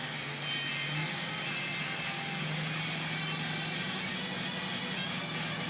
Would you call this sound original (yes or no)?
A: yes